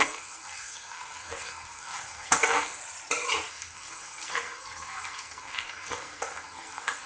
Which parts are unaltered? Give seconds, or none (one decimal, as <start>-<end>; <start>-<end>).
2.8-3.5

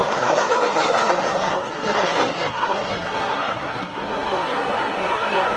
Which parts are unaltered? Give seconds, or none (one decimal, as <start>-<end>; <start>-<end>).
none

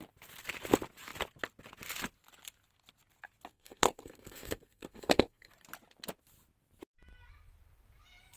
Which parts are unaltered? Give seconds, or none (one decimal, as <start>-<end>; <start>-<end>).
0.0-3.5; 5.5-8.4

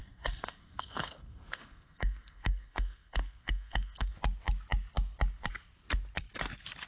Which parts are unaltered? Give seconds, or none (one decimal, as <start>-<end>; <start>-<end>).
4.1-6.9

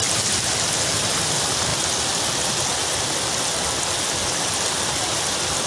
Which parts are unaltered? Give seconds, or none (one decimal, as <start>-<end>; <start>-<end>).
0.0-5.7

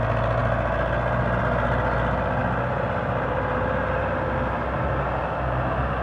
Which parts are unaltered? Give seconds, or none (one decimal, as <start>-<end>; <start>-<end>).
0.0-6.0

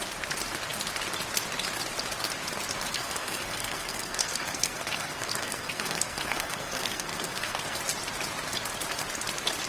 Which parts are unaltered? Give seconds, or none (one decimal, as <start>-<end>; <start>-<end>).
0.0-2.9; 7.8-9.7